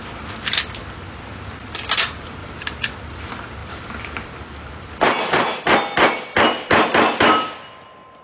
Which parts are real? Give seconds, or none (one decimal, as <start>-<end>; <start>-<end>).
0.0-2.4; 3.2-3.6; 4.7-8.2